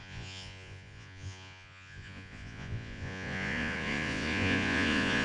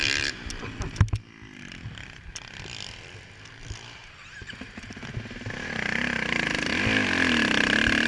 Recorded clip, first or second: second